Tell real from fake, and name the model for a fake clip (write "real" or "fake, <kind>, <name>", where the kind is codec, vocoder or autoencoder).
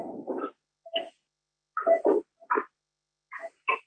real